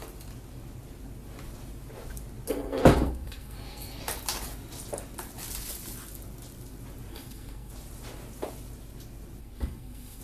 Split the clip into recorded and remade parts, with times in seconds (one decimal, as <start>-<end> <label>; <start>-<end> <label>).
0.0-2.5 recorded; 2.5-4.0 remade; 4.0-7.1 recorded; 7.1-7.7 remade; 7.7-9.4 recorded; 9.4-10.2 remade